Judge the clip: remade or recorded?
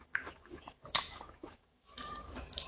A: remade